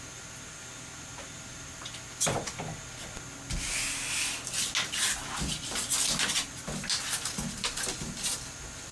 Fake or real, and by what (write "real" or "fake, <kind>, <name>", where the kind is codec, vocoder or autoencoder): real